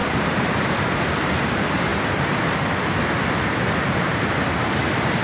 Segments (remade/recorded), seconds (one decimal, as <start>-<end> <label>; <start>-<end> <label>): 0.0-5.2 remade